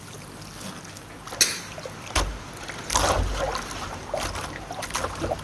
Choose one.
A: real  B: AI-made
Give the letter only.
A